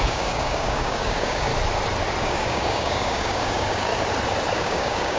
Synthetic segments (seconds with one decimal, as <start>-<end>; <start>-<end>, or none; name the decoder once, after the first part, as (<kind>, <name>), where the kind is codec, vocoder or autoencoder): 0.0-1.5 (codec, DAC); 2.2-3.9; 4.5-5.2